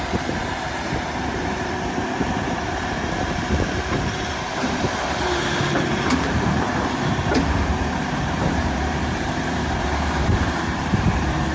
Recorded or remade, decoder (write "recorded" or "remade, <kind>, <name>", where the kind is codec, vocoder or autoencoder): remade, vocoder, BigVGAN v2